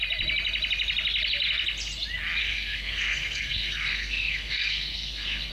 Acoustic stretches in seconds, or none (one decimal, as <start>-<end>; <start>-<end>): 0.0-2.4